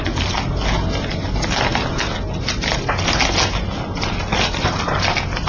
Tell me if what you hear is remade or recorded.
recorded